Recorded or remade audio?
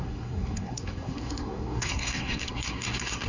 remade